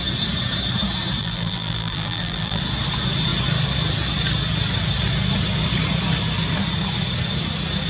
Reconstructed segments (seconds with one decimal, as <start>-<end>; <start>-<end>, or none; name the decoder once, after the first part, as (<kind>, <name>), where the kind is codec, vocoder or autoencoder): 1.2-2.6 (vocoder, BigVGAN v2)